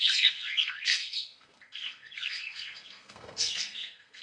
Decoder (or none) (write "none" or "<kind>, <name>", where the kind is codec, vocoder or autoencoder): codec, SNAC